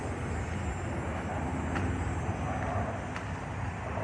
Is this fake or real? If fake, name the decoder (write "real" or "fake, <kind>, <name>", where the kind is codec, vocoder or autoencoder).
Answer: real